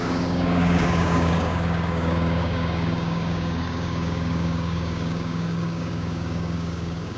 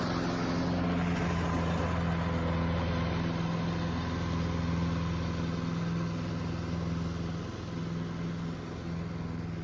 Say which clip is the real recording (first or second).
second